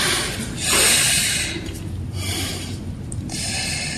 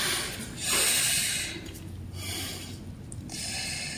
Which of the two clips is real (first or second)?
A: second